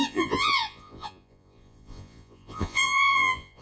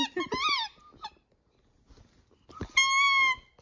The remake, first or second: first